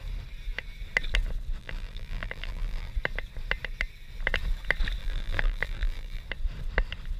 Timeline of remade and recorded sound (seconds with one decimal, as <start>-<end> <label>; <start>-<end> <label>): 0.0-1.6 recorded; 1.6-2.9 remade; 2.9-5.0 recorded; 5.0-6.2 remade; 6.2-7.2 recorded